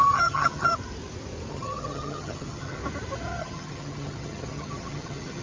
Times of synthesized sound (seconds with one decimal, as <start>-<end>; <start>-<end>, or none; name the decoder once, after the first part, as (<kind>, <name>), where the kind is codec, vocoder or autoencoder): 0.0-0.7 (vocoder, HiFi-GAN); 1.5-2.8; 3.4-5.4